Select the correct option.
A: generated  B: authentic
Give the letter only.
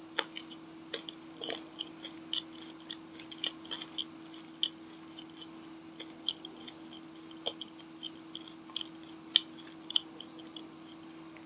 B